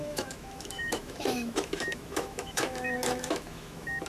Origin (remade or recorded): remade